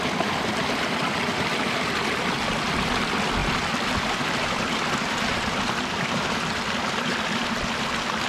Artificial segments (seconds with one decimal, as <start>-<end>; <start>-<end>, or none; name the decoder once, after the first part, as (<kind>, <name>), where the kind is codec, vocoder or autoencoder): 3.4-6.8 (vocoder, BigVGAN v2)